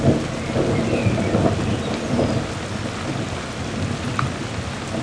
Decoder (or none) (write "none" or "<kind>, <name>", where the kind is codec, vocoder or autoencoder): none